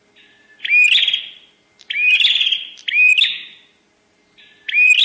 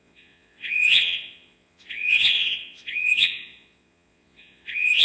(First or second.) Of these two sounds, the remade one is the second